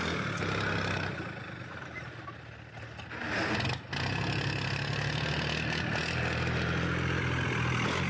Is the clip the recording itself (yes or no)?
yes